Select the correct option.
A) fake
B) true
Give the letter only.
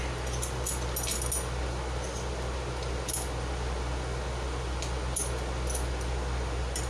B